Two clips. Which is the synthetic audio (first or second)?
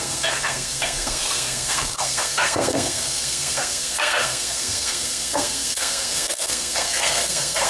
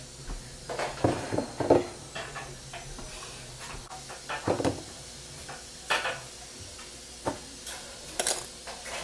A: first